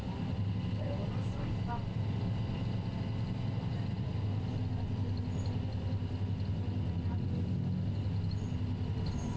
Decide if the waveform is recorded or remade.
recorded